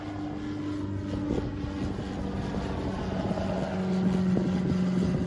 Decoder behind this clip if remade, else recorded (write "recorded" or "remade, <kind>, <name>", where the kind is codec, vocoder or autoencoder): recorded